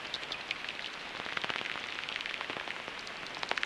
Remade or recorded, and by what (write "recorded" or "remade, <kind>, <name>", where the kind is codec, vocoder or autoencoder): recorded